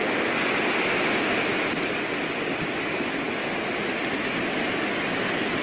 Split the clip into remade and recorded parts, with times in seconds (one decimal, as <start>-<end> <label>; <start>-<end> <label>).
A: 0.0-5.6 recorded